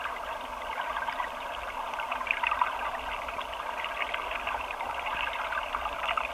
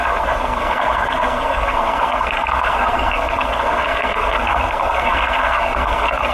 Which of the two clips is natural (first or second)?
first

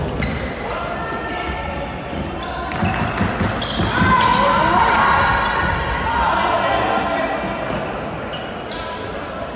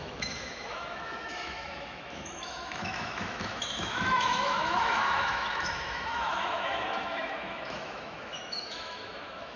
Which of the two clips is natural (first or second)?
first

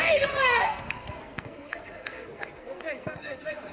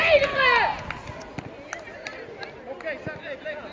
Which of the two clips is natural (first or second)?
second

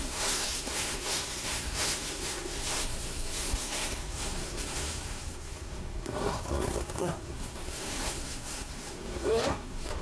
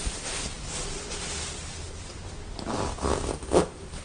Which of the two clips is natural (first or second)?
second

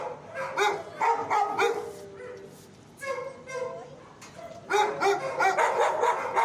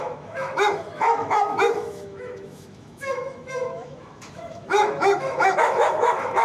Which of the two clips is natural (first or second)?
first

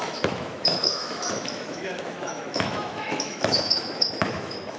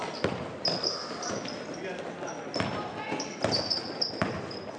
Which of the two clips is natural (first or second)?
second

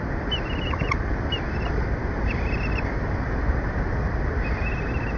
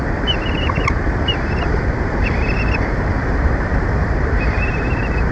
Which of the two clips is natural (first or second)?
first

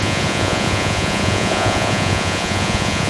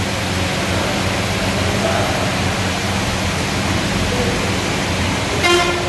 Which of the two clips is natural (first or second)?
second